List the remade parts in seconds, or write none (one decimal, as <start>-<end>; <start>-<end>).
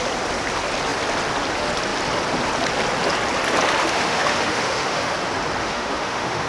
3.8-5.1; 5.6-6.5